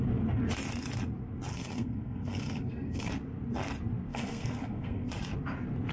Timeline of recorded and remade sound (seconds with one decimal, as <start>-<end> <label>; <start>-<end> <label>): 0.0-1.5 recorded; 1.5-3.1 remade; 3.1-4.1 recorded; 4.1-5.1 remade; 5.1-5.9 recorded